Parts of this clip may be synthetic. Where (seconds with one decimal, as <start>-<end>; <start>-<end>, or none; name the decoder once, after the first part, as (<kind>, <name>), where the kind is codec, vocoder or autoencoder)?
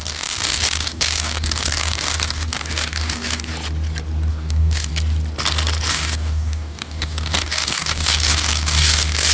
0.0-3.5 (codec, DAC); 4.3-4.9; 5.9-9.3